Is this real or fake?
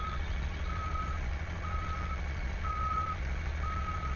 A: fake